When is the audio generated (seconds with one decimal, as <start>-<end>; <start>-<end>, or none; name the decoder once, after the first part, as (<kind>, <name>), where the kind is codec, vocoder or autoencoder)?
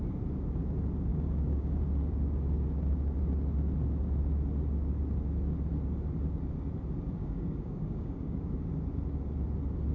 1.1-1.8 (codec, DAC); 7.2-8.4